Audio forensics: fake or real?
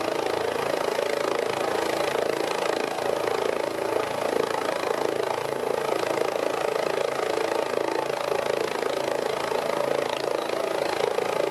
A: real